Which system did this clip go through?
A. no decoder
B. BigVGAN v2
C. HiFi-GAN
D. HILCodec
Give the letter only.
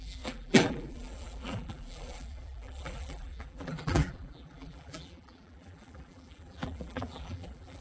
B